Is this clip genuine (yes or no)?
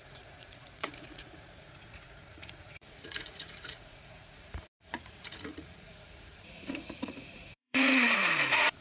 no